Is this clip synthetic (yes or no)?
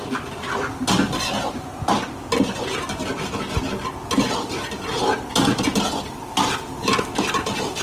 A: no